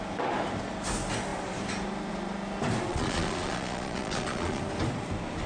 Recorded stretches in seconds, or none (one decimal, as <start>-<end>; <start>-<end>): 0.0-2.9; 4.6-5.5